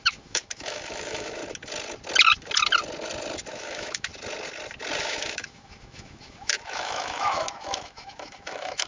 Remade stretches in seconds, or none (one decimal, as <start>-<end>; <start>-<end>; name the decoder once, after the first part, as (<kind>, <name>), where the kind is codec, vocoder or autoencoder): 0.0-1.4 (autoencoder, DAC-VAE); 3.5-4.1; 5.0-8.9